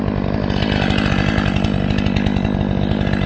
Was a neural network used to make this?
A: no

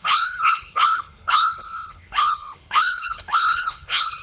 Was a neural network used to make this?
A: yes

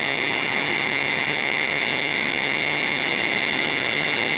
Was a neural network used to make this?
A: yes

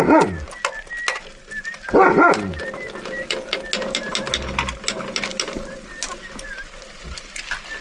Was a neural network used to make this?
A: no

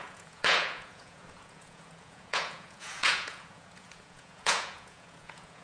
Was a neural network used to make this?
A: yes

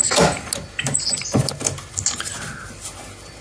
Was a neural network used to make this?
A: no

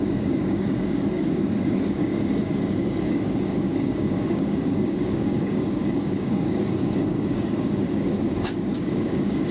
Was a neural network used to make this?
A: yes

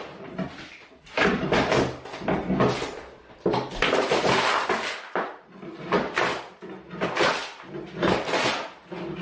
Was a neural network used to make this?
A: no